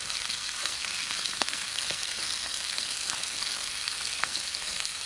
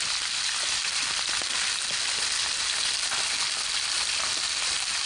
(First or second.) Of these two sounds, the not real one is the first